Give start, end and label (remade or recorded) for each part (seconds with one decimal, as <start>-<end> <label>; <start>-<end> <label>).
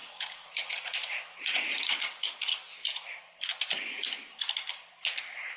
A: 0.0-1.9 remade; 1.9-5.6 recorded